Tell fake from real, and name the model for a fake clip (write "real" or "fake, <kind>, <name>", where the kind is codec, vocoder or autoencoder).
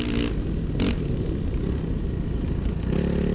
real